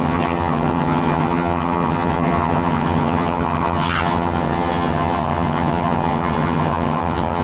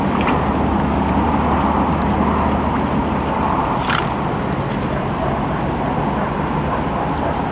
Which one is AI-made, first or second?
first